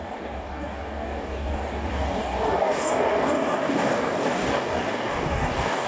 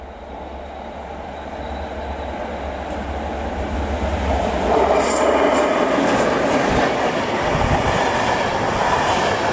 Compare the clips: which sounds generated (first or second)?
first